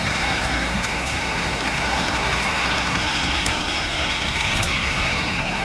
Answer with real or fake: fake